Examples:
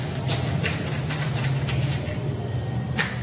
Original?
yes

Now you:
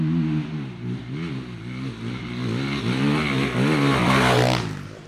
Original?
yes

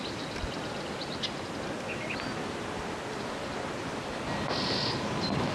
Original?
yes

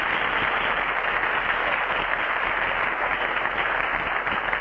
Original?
yes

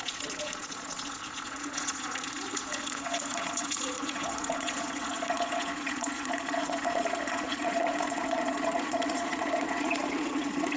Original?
no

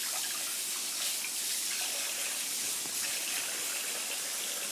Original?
yes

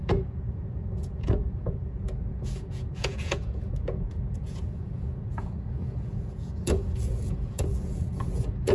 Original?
no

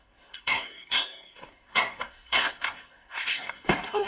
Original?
no